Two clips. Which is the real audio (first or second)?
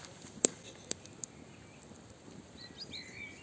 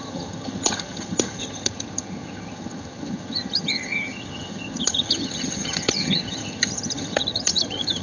first